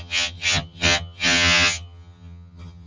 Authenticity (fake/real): fake